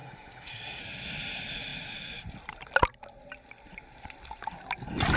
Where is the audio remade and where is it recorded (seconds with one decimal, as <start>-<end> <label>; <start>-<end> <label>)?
0.0-0.8 remade; 0.8-5.2 recorded